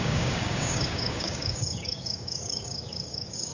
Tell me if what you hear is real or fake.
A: fake